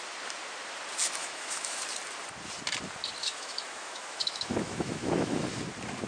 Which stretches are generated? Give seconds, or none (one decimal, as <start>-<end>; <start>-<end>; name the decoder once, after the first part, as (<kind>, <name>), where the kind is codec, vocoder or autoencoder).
1.2-1.8 (autoencoder, DAC-VAE); 3.2-5.4